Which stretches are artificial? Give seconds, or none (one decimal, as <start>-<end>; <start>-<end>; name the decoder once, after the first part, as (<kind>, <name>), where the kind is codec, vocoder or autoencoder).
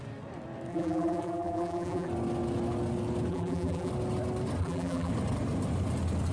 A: 0.7-2.1 (vocoder, BigVGAN v2); 3.3-3.9; 4.6-5.1